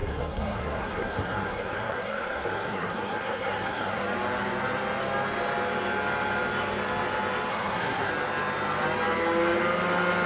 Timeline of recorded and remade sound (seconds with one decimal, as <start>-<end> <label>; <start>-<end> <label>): 0.0-4.0 remade; 4.0-7.5 recorded; 7.5-8.1 remade; 8.1-10.3 recorded